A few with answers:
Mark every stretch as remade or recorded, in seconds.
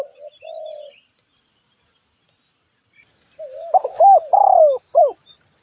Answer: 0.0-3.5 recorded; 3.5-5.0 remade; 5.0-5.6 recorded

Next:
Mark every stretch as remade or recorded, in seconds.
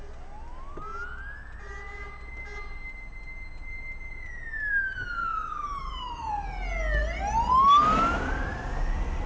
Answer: 0.0-5.2 recorded; 5.2-6.3 remade; 6.3-9.3 recorded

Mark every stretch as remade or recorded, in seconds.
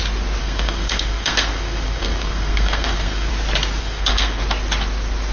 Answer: 0.0-0.4 recorded; 0.4-3.3 remade; 3.3-3.8 recorded; 3.8-4.4 remade; 4.4-5.3 recorded